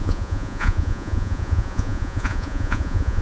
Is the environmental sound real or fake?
fake